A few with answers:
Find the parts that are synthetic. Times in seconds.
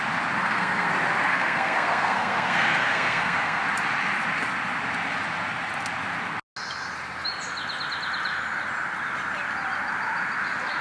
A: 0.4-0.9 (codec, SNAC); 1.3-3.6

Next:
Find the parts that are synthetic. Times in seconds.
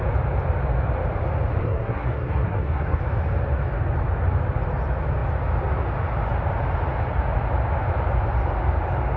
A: 1.6-3.0 (codec, SNAC)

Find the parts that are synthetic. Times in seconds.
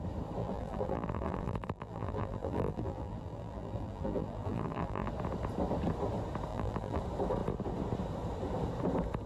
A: 0.4-5.1 (vocoder, BigVGAN v2); 6.5-7.0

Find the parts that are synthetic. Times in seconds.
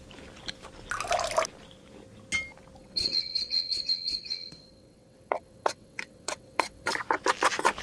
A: 2.8-6.9 (vocoder, WaveNeXt)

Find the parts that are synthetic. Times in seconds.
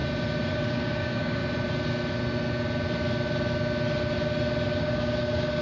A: 0.5-1.4 (codec, DAC); 4.8-5.6